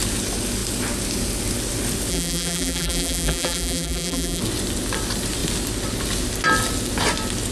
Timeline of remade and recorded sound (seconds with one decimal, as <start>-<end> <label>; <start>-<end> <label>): 0.0-2.1 recorded; 2.1-4.4 remade; 4.4-7.5 recorded